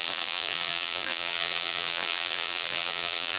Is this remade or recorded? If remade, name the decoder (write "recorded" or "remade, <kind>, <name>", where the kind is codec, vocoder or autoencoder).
remade, vocoder, BigVGAN v2